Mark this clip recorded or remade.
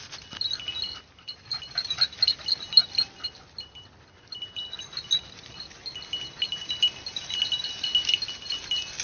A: recorded